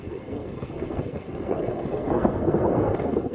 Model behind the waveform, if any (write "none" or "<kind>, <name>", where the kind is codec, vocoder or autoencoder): codec, SNAC